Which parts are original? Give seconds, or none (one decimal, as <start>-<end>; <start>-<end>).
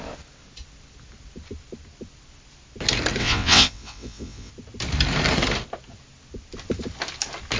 0.0-3.2; 4.5-7.6